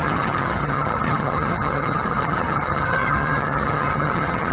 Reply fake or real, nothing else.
fake